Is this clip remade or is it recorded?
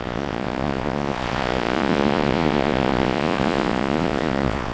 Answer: remade